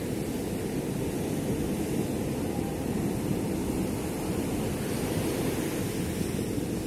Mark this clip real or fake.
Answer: real